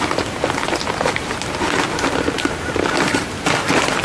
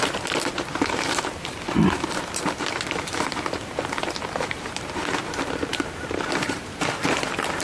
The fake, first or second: second